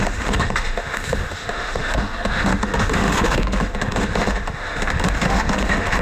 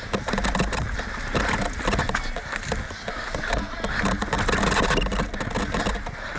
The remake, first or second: first